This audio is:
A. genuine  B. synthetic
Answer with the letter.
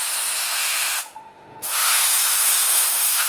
B